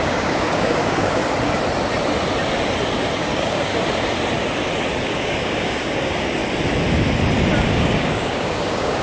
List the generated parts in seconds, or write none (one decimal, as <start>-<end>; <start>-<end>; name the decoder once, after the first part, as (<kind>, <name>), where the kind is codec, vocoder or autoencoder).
0.0-1.2 (codec, DAC); 3.2-3.7; 5.1-6.4; 7.6-9.0